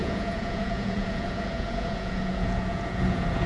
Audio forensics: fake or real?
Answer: fake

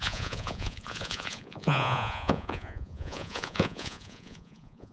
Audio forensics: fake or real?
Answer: fake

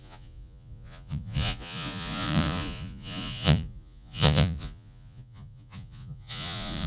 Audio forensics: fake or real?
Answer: fake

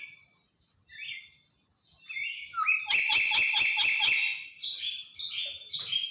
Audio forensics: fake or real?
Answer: real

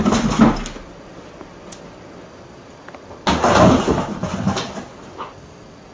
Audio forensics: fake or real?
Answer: real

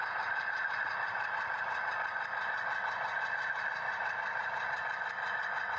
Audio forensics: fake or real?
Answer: real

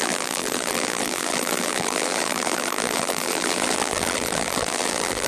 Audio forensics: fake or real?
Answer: fake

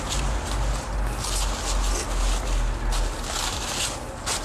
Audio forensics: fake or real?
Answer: real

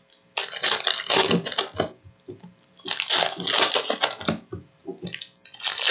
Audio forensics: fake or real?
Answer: real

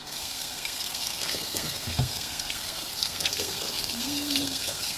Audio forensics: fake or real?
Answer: fake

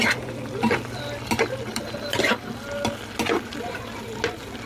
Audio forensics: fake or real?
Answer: real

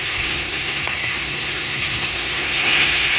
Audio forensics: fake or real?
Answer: fake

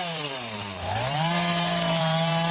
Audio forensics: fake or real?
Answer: fake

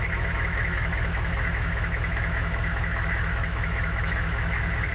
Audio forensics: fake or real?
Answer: fake